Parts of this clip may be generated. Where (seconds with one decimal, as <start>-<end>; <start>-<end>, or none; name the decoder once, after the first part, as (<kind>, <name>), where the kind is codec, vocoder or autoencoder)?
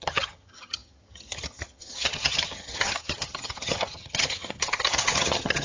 0.0-5.6 (vocoder, HiFi-GAN)